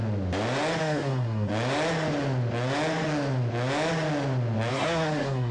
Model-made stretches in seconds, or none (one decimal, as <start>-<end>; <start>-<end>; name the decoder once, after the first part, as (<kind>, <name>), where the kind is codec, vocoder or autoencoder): 0.8-1.5 (codec, SNAC); 4.7-5.5